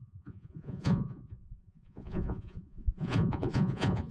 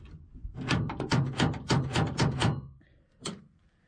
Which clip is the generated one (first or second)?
first